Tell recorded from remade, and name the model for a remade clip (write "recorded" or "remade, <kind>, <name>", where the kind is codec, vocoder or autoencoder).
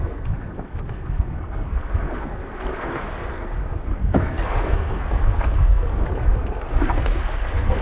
remade, codec, SNAC